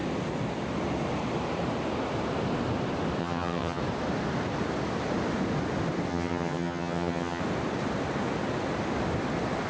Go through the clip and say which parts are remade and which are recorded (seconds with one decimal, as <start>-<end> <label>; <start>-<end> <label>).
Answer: 0.0-3.2 recorded; 3.2-3.8 remade; 3.8-6.1 recorded; 6.1-7.4 remade; 7.4-9.7 recorded